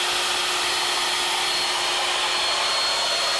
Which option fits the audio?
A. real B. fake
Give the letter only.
A